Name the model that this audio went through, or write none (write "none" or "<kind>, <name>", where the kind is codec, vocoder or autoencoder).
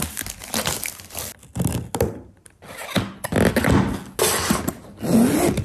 none